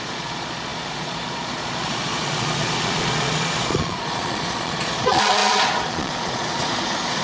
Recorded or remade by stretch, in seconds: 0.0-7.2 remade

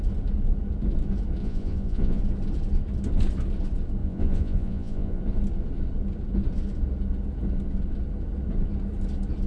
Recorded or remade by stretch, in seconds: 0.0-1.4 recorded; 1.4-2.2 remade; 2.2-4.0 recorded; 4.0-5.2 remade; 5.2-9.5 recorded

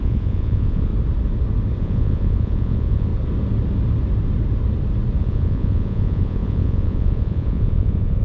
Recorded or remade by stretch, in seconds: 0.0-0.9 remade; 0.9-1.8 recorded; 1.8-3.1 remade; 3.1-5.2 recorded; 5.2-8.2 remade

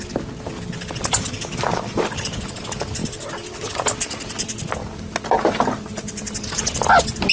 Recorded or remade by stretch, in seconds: 0.0-7.3 recorded

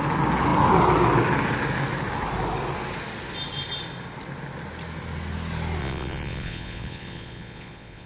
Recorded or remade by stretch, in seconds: 0.0-5.8 recorded; 5.8-8.1 remade

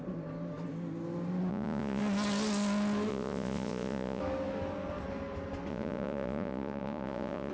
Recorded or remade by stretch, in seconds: 0.0-1.5 recorded; 1.5-2.0 remade; 2.0-3.1 recorded; 3.1-4.2 remade; 4.2-5.7 recorded; 5.7-7.5 remade